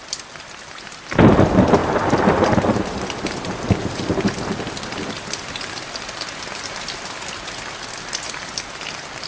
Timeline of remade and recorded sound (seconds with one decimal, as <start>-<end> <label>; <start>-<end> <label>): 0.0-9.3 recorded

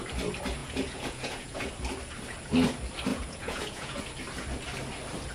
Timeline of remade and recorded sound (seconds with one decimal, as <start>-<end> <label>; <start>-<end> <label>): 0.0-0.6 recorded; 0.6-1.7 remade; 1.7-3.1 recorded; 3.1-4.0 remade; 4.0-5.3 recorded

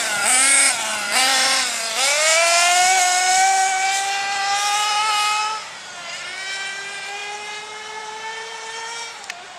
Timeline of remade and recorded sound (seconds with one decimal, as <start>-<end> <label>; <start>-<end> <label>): 0.0-0.9 recorded; 0.9-1.7 remade; 1.7-5.4 recorded; 5.4-5.9 remade; 5.9-9.6 recorded

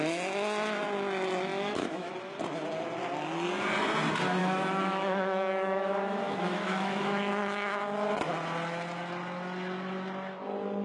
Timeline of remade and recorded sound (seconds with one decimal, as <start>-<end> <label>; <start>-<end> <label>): 0.0-1.5 recorded; 1.5-2.1 remade; 2.1-4.4 recorded; 4.4-7.8 remade; 7.8-10.8 recorded

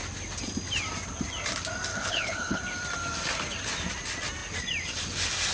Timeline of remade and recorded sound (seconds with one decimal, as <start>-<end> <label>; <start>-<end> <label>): 0.0-1.9 recorded; 1.9-2.6 remade; 2.6-5.5 recorded